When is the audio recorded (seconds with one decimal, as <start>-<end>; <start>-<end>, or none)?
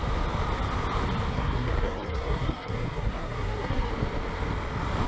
0.0-1.3; 3.9-5.1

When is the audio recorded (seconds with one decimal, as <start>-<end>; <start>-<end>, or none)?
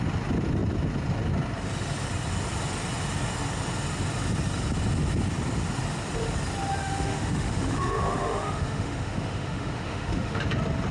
0.0-6.8; 10.4-10.9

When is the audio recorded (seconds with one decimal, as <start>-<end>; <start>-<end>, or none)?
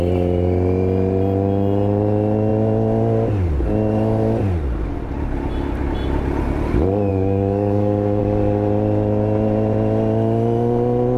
0.0-7.1; 8.2-11.2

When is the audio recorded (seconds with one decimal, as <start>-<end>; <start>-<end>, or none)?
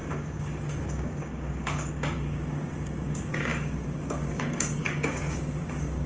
none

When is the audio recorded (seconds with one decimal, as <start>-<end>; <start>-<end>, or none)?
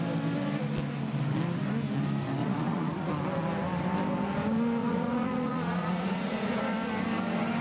0.0-2.4; 3.1-4.8; 6.6-7.6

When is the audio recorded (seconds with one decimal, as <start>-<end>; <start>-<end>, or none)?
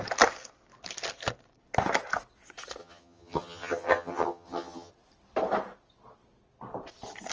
0.0-2.8; 4.9-7.3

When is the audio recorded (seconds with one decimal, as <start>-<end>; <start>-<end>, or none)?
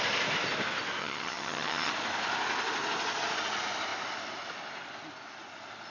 0.0-1.0; 1.9-5.9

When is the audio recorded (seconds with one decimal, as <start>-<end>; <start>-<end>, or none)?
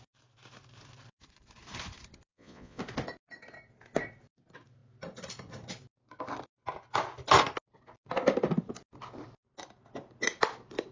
0.0-2.3; 2.8-10.9